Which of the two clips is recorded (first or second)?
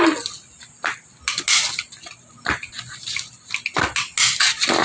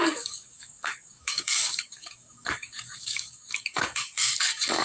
first